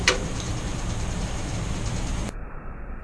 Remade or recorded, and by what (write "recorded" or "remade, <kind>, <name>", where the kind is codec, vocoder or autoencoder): remade, vocoder, BigVGAN v2